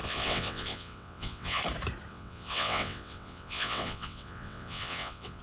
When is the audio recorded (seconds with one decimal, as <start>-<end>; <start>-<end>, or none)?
1.6-2.1